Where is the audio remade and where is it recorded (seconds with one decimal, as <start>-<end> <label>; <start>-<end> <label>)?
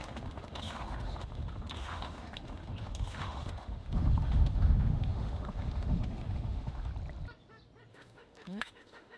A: 0.0-6.9 remade; 6.9-7.9 recorded; 7.9-9.2 remade